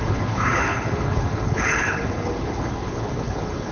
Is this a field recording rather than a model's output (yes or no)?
no